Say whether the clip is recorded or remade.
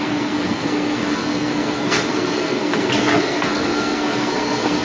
remade